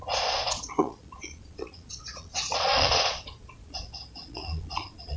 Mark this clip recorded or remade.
remade